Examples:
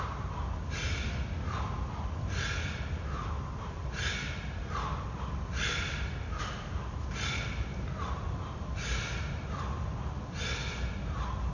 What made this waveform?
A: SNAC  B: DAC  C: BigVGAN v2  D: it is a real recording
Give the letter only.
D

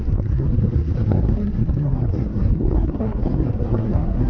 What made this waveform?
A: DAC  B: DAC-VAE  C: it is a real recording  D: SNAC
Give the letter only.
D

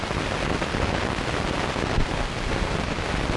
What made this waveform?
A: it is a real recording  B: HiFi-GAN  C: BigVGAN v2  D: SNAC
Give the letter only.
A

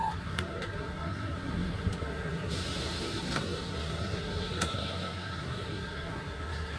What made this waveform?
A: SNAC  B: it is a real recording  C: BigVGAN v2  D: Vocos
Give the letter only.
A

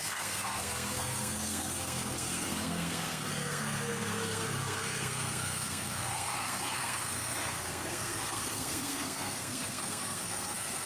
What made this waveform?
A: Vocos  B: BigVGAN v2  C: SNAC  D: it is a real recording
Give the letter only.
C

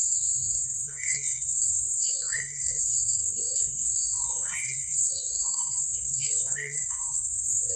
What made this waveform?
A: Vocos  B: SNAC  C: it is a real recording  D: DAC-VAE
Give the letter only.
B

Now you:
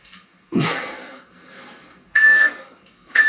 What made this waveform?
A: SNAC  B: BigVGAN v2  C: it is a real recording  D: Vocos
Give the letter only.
A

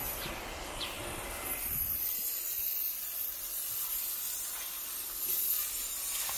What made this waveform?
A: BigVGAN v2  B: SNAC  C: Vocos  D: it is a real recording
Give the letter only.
D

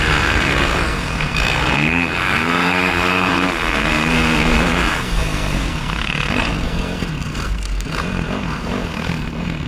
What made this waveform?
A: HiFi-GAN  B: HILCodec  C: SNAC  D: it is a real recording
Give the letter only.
C